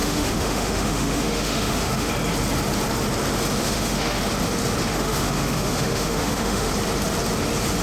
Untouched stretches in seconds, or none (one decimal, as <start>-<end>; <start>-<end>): 2.1-3.6; 4.2-4.9; 6.7-7.8